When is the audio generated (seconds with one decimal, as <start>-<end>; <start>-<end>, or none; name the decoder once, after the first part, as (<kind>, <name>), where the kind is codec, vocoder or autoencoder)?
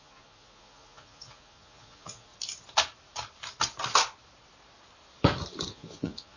0.0-2.3 (vocoder, Vocos); 5.7-6.4